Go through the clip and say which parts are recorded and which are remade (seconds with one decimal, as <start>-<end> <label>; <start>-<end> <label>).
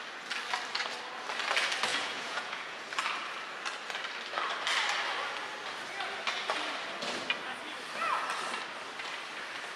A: 0.0-1.9 recorded; 1.9-2.8 remade; 2.8-9.8 recorded